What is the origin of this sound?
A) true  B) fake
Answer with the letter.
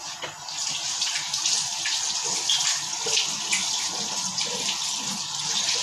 A